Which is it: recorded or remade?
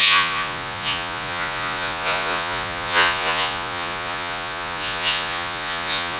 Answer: remade